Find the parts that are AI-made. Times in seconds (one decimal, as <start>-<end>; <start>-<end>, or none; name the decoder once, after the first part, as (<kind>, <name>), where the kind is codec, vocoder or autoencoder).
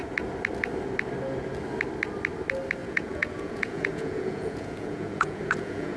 2.8-6.0 (vocoder, Vocos)